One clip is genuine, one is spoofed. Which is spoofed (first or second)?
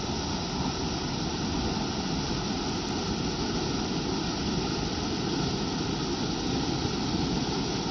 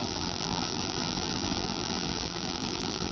second